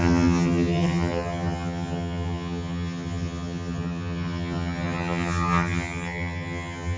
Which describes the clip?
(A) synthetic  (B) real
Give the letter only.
A